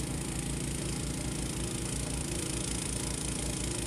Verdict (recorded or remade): remade